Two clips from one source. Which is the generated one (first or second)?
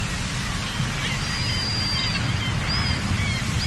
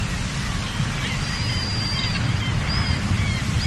second